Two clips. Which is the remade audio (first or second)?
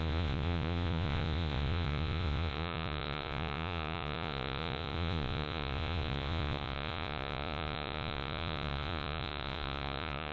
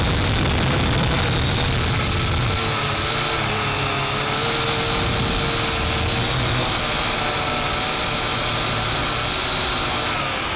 first